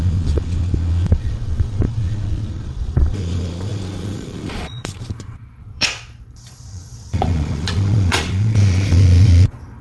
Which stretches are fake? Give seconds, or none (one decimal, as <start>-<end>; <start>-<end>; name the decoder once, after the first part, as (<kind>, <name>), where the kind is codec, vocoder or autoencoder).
0.0-9.8 (vocoder, Vocos)